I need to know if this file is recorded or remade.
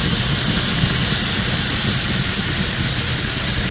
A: recorded